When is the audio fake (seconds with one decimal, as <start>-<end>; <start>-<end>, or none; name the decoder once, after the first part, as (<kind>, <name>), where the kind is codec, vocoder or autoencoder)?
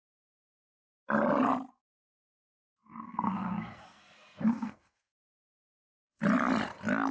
1.7-6.2 (codec, SNAC)